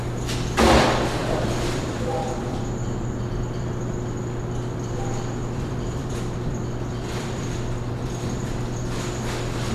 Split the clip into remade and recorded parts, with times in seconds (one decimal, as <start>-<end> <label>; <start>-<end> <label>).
0.0-1.2 recorded; 1.2-3.7 remade; 3.7-5.4 recorded; 5.4-7.9 remade; 7.9-9.7 recorded